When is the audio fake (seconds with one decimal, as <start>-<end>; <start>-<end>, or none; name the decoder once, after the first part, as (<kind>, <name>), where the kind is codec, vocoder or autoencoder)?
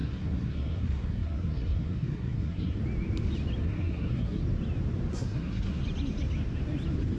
0.0-2.8 (codec, SNAC); 3.6-4.4; 5.1-5.8